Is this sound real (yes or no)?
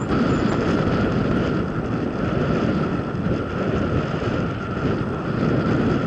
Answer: yes